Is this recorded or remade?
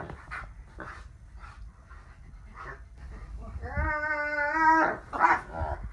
recorded